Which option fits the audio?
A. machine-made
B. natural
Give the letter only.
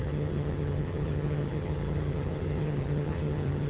A